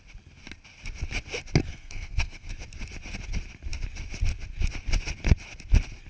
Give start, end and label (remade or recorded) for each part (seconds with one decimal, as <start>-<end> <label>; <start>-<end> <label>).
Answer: 0.0-1.7 recorded; 1.7-2.5 remade; 2.5-6.1 recorded